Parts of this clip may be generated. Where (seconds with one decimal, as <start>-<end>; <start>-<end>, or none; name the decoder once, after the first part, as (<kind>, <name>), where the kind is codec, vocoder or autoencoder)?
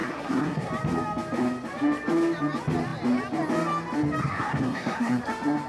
0.0-0.7 (codec, SNAC); 4.2-5.2